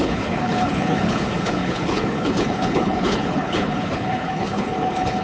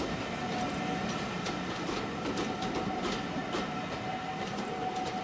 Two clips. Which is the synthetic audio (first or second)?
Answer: first